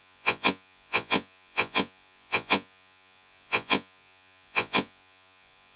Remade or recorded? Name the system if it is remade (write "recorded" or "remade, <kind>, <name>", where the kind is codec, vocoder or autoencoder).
remade, vocoder, Vocos